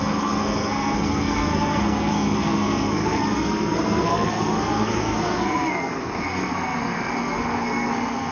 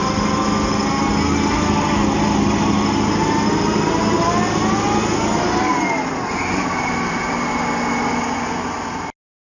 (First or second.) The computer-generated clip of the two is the first